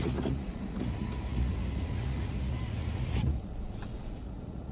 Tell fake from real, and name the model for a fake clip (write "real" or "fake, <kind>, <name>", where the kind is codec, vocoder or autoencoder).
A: fake, vocoder, Vocos